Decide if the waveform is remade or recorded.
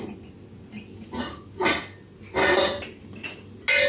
recorded